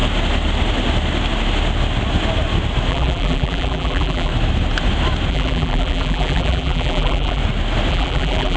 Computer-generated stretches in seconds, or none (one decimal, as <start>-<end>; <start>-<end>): 2.9-4.3; 5.3-7.4; 7.9-8.6